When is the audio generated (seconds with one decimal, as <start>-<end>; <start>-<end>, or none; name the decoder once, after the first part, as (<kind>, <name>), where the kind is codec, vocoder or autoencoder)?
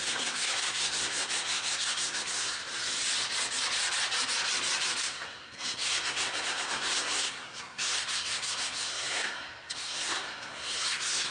0.0-2.6 (codec, SNAC); 5.0-11.3